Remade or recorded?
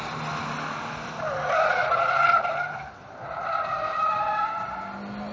recorded